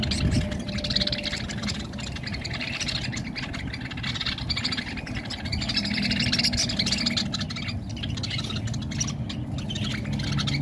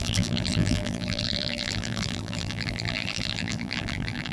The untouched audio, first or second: first